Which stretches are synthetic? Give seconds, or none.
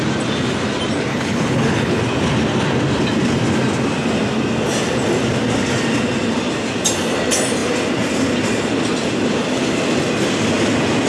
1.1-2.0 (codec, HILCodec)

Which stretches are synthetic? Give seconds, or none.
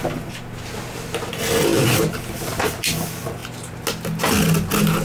1.7-2.7 (vocoder, BigVGAN v2)